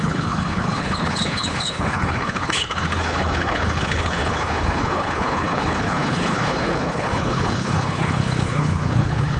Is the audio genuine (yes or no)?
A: no